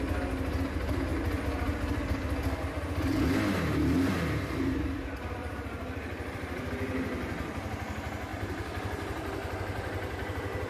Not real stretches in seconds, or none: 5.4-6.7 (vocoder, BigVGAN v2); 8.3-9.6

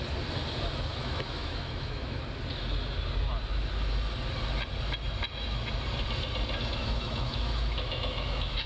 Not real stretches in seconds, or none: 0.9-2.2 (autoencoder, DAC-VAE); 6.8-8.7

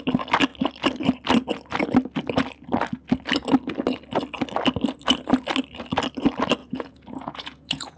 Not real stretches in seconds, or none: 6.6-8.0 (vocoder, Vocos)

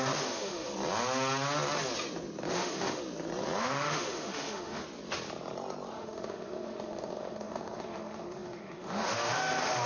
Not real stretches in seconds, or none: 0.0-0.7 (autoencoder, DAC-VAE); 2.5-3.0; 3.6-4.8; 5.9-9.9

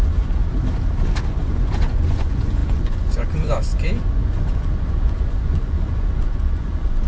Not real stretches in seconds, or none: 0.0-0.4 (vocoder, Vocos); 1.3-7.1